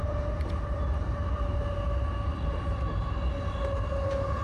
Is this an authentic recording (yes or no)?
yes